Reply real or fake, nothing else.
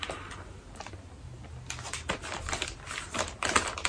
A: real